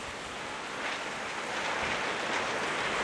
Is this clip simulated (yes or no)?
no